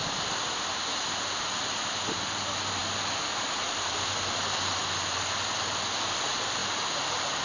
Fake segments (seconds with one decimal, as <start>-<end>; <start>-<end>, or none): 2.8-4.8